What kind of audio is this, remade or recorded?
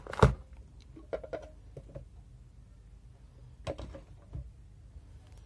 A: recorded